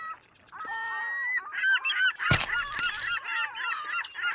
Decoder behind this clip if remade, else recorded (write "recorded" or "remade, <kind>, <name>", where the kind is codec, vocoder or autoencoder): recorded